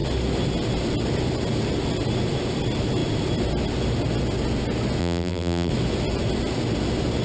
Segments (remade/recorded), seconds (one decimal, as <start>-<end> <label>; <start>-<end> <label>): 0.0-5.0 recorded; 5.0-5.7 remade; 5.7-7.2 recorded